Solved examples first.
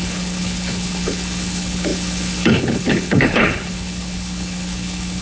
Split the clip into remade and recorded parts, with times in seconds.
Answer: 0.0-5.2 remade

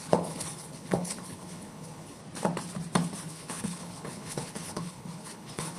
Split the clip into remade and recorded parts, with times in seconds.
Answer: 0.0-2.2 remade; 2.2-3.2 recorded; 3.2-5.8 remade

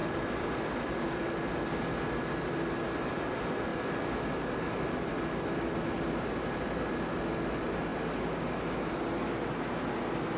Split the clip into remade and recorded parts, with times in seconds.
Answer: 0.0-10.4 recorded

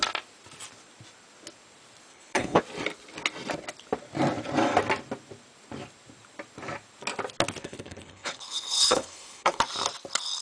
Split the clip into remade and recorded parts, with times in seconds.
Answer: 0.0-2.1 recorded; 2.1-2.6 remade; 2.6-7.6 recorded; 7.6-9.6 remade; 9.6-10.4 recorded

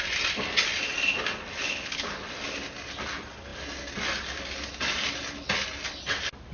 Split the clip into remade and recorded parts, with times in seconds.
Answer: 0.0-1.6 recorded; 1.6-2.1 remade; 2.1-6.5 recorded

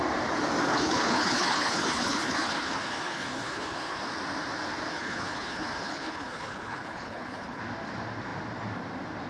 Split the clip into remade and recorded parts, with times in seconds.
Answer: 0.0-0.7 recorded; 0.7-4.0 remade; 4.0-4.9 recorded; 4.9-7.6 remade; 7.6-9.3 recorded

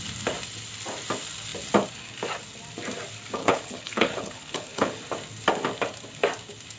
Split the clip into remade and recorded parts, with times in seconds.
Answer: 0.0-3.4 recorded; 3.4-5.0 remade; 5.0-6.8 recorded